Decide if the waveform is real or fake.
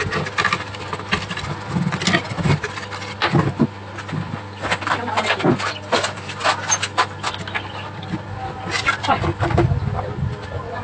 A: real